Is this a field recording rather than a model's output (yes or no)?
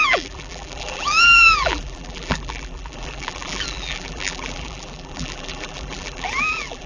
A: no